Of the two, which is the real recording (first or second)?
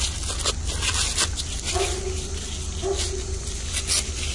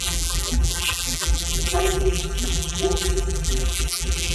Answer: first